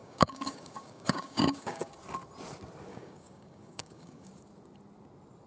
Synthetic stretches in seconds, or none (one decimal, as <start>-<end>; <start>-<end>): 0.0-1.9; 2.9-4.3